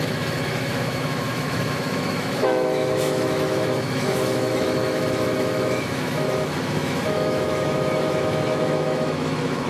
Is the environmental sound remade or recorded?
remade